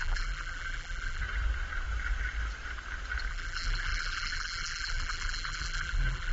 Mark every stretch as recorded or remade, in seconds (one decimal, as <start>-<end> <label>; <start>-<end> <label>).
0.0-1.2 remade; 1.2-3.3 recorded; 3.3-6.3 remade